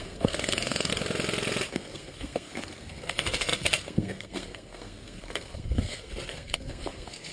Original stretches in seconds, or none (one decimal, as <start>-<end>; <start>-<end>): 0.9-1.7